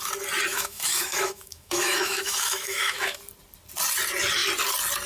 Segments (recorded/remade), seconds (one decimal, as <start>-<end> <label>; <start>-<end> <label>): 0.0-0.5 recorded; 0.5-3.2 remade; 3.2-5.1 recorded